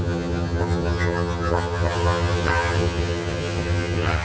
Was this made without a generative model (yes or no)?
no